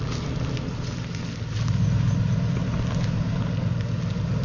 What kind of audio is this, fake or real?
real